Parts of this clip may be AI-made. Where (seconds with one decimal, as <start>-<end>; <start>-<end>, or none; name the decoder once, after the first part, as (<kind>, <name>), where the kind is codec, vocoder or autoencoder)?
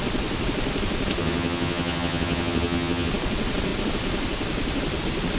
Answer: 1.2-3.1 (vocoder, HiFi-GAN)